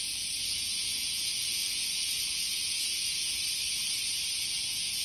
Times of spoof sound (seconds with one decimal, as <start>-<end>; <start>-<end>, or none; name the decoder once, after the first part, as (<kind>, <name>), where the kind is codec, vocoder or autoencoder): 0.0-3.4 (vocoder, Vocos); 4.4-5.0